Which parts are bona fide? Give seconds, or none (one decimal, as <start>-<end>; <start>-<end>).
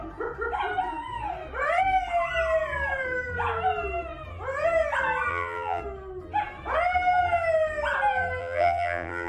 0.0-5.3; 5.8-8.4